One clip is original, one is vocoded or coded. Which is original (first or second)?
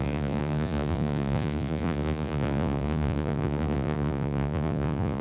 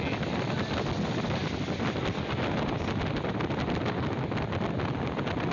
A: second